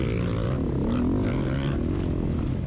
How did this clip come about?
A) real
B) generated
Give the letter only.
A